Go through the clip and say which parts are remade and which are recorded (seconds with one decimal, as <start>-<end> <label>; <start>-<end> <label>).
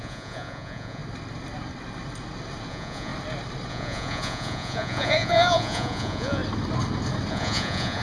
0.0-1.0 remade; 1.0-2.7 recorded; 2.7-3.1 remade; 3.1-3.7 recorded; 3.7-6.4 remade; 6.4-7.3 recorded; 7.3-8.0 remade